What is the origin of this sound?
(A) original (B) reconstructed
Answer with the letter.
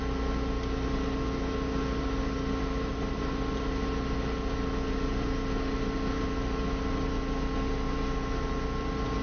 A